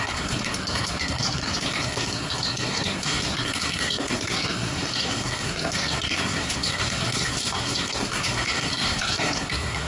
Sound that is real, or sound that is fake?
fake